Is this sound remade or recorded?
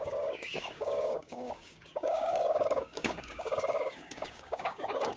remade